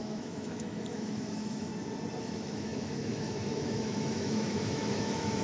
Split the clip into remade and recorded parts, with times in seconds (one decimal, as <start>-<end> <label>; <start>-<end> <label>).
0.0-1.7 remade; 1.7-2.2 recorded; 2.2-5.4 remade